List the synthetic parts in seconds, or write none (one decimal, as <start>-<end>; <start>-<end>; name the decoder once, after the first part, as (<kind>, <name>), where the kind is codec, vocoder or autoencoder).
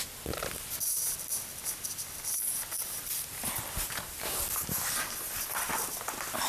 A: none